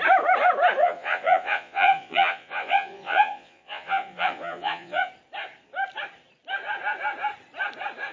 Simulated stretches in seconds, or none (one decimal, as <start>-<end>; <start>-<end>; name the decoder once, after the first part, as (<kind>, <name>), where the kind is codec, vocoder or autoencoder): 0.8-5.1 (vocoder, Vocos)